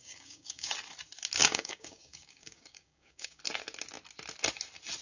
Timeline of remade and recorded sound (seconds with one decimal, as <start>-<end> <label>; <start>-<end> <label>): 0.0-0.7 remade; 0.7-1.4 recorded; 1.4-3.4 remade; 3.4-5.0 recorded